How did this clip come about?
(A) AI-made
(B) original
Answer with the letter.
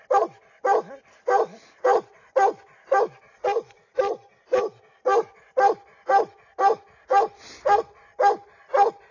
B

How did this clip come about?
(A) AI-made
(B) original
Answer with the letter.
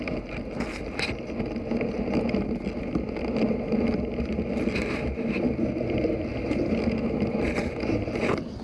B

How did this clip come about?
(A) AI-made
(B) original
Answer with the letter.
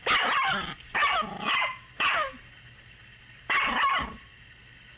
B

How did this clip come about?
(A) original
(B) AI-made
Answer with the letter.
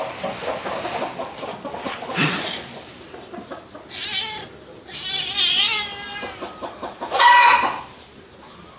A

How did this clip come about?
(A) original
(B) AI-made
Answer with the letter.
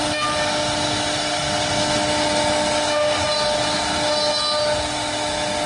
A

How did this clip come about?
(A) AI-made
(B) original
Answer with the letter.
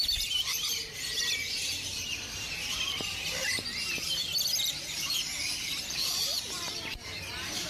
A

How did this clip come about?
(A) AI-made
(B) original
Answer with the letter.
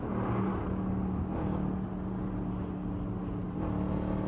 B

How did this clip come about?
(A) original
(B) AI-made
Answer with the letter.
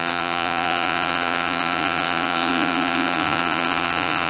B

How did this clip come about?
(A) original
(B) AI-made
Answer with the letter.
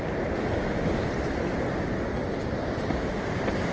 A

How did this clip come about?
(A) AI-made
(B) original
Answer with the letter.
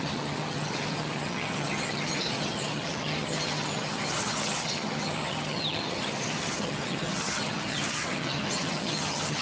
A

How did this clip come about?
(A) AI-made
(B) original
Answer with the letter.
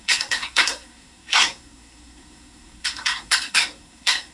A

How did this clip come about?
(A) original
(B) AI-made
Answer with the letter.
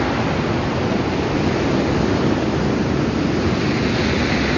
A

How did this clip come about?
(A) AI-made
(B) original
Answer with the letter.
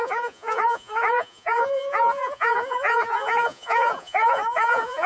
A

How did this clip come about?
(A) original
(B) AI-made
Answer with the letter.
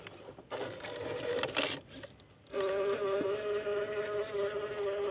A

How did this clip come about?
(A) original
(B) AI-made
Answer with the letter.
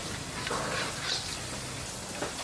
A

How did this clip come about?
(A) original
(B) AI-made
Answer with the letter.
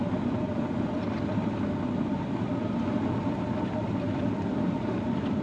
B